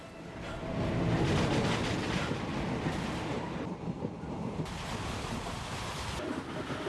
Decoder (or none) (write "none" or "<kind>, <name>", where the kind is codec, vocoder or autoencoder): none